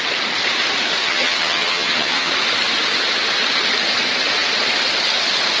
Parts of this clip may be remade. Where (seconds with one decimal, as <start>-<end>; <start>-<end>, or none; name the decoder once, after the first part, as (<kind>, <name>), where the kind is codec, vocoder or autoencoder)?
1.0-2.3 (vocoder, HiFi-GAN)